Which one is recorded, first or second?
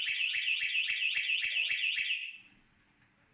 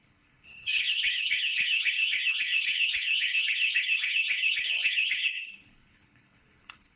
first